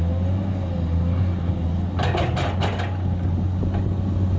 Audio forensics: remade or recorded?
recorded